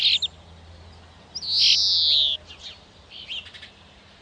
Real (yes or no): yes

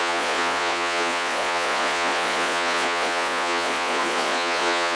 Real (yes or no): no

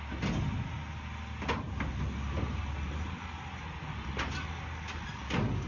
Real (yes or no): yes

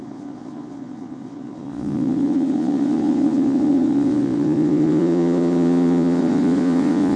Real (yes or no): no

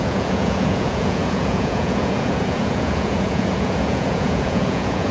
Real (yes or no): no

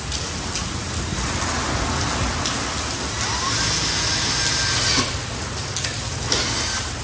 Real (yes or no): yes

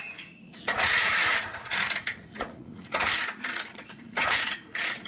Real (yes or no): no